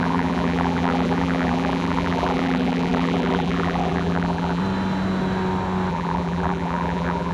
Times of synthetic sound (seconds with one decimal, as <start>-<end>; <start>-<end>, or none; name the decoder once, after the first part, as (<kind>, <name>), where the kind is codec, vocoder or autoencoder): 0.0-4.6 (vocoder, BigVGAN v2); 5.9-7.3

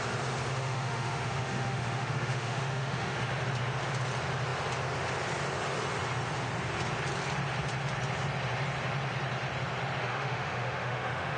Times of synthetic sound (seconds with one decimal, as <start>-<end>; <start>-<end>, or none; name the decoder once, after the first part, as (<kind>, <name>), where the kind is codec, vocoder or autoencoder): 0.5-3.3 (autoencoder, DAC-VAE); 10.0-11.4

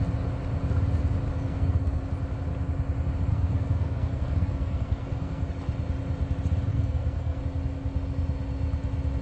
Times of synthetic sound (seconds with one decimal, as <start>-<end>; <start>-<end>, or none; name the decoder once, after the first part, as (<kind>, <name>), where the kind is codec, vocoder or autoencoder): 1.3-2.0 (codec, SNAC); 3.3-5.5; 6.7-7.4

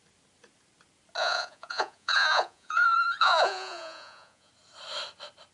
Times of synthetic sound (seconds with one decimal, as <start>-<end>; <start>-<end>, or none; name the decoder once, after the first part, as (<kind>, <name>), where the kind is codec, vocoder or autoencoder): 1.2-4.5 (vocoder, Vocos)

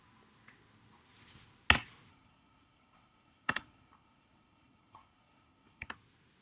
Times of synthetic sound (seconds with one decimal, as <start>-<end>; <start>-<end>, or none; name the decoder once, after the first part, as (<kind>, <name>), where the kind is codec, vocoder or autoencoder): 2.1-5.9 (codec, HILCodec)

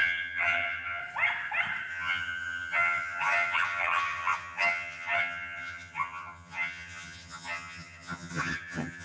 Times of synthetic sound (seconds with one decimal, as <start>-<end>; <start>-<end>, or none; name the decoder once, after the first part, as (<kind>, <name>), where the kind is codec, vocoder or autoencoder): 0.0-1.0 (vocoder, HiFi-GAN); 1.9-9.0

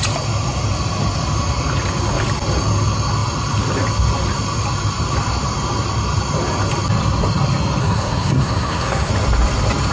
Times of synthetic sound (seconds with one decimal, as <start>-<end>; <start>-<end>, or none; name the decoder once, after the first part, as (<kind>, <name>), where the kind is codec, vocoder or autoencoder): 7.8-9.1 (codec, SNAC)